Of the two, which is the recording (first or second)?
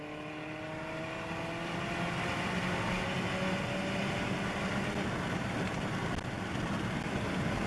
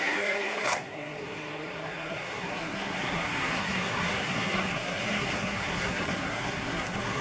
first